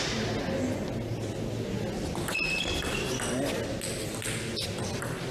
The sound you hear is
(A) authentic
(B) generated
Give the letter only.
A